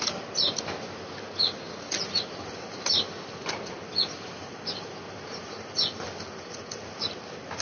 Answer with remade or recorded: recorded